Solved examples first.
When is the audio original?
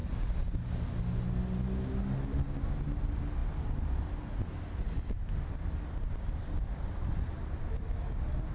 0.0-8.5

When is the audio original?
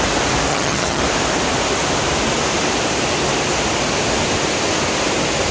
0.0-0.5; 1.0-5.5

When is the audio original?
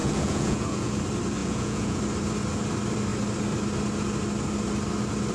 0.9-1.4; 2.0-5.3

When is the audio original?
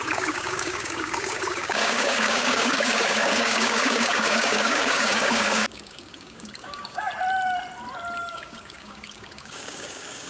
7.1-8.3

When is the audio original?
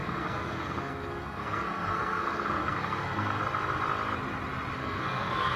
3.4-4.8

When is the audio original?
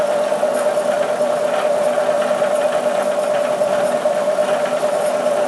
0.0-5.5